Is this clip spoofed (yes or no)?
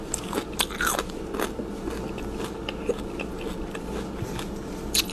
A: no